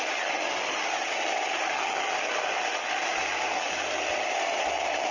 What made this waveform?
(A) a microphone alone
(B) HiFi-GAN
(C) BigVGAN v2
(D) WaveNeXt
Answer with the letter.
A